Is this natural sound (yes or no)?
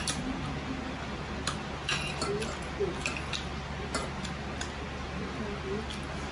yes